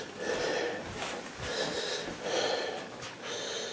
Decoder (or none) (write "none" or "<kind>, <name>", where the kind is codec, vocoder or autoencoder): none